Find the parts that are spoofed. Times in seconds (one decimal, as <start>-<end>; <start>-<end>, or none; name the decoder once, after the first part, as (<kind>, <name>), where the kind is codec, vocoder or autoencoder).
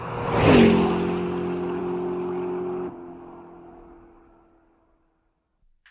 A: none